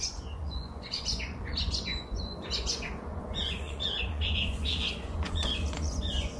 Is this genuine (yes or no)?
no